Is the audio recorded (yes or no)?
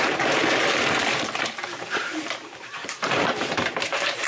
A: no